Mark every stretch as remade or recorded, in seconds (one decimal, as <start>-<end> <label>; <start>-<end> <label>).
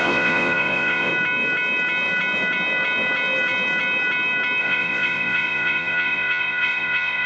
0.0-1.1 remade; 1.1-4.6 recorded; 4.6-7.3 remade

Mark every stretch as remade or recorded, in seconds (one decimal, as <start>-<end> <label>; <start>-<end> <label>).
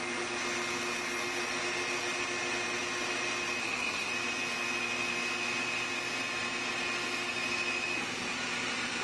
0.0-3.6 recorded; 3.6-4.1 remade; 4.1-9.0 recorded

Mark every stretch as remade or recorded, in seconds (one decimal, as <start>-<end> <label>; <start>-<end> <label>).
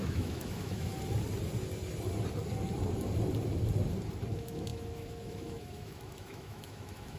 0.0-0.9 remade; 0.9-4.3 recorded; 4.3-7.2 remade